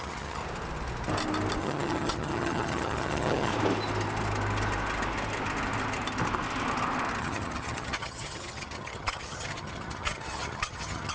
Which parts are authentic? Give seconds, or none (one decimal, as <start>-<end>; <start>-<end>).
0.4-1.6; 3.5-7.2